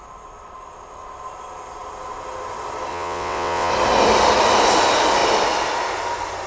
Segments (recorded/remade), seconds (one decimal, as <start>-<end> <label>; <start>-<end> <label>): 0.0-2.9 recorded; 2.9-3.7 remade; 3.7-6.5 recorded

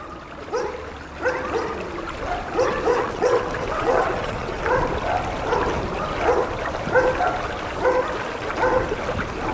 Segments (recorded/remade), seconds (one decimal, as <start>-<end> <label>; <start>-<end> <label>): 0.0-2.9 recorded; 2.9-4.6 remade; 4.6-9.5 recorded